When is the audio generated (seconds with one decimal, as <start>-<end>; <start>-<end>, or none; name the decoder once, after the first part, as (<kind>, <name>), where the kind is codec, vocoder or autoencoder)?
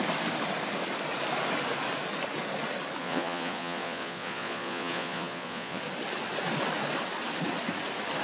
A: 3.0-5.8 (vocoder, Vocos)